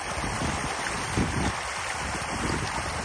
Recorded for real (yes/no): yes